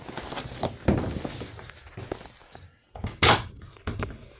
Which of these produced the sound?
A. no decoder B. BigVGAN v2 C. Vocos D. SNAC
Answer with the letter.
A